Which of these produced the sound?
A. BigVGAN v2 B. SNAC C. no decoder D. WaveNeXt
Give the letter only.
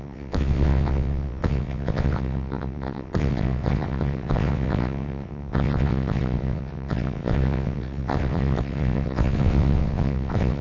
D